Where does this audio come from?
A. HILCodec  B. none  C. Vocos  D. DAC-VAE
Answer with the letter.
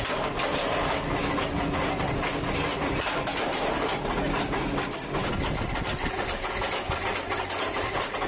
B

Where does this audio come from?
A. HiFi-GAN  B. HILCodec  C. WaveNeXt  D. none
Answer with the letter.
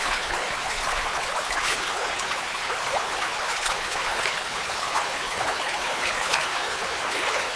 B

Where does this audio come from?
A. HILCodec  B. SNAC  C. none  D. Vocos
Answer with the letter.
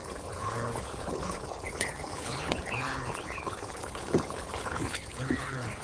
A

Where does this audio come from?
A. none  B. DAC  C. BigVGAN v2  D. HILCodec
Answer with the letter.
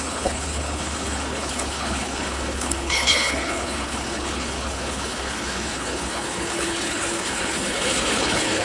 D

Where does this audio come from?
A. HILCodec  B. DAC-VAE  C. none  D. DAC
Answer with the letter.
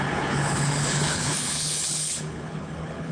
A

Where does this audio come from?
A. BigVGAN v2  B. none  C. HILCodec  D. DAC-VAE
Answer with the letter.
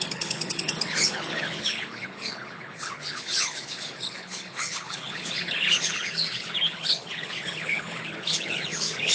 C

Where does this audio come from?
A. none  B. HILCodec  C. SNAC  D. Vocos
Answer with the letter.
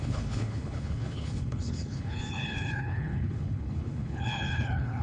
B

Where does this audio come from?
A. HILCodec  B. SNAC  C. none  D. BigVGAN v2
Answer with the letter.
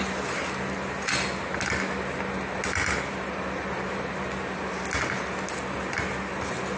C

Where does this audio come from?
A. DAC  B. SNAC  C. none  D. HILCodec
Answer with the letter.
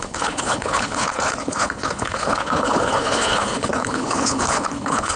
D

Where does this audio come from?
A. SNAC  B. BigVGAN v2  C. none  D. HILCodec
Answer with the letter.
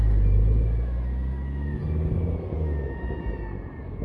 C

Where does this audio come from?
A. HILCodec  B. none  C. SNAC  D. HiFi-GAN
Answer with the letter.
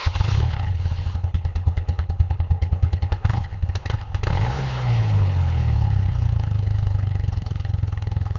A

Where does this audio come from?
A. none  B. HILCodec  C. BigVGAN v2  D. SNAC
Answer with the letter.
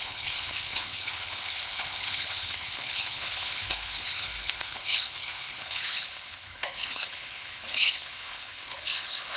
B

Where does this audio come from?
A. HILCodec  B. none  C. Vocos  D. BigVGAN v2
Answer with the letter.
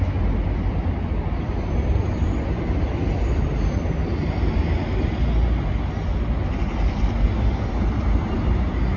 B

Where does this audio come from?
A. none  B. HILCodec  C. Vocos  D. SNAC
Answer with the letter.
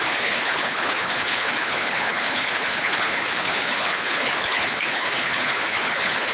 B